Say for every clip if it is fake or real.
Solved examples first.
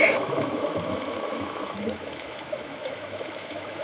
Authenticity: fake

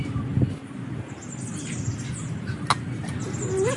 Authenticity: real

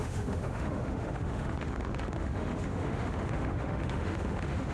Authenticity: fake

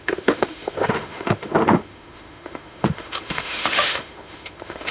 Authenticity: fake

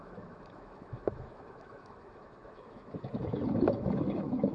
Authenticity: fake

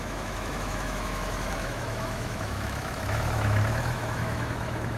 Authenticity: fake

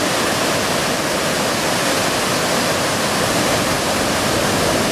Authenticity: real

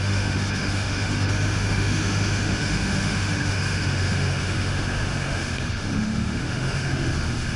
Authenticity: fake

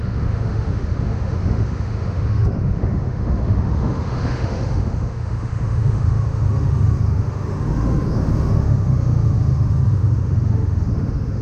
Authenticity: fake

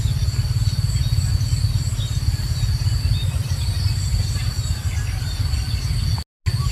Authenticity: real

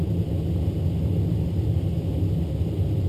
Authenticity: real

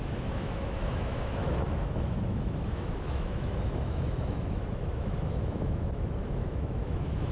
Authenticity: fake